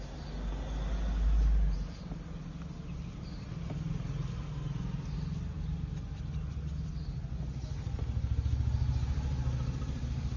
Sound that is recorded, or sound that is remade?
recorded